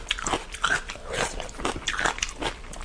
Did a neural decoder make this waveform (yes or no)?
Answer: no